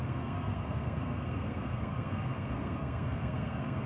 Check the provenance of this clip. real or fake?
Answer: fake